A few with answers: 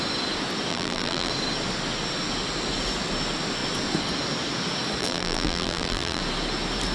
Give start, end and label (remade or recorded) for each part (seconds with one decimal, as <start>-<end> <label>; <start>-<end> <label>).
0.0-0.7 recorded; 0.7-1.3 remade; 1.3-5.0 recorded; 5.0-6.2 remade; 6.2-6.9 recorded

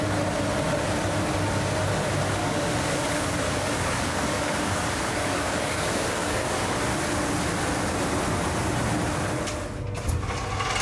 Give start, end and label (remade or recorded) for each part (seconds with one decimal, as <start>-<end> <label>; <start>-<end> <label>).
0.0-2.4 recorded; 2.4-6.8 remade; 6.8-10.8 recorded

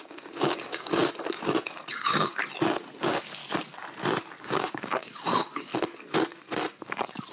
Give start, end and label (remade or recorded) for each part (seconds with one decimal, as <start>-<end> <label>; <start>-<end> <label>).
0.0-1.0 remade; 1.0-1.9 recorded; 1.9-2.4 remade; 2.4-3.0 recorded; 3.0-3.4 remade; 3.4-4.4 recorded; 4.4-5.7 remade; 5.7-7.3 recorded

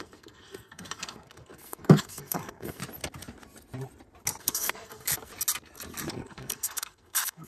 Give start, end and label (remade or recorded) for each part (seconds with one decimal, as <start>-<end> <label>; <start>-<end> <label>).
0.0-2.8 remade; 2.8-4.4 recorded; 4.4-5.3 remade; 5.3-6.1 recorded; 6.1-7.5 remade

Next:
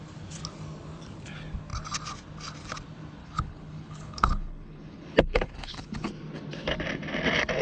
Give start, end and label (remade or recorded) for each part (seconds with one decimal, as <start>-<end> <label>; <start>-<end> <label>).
0.0-3.2 recorded; 3.2-6.1 remade; 6.1-7.6 recorded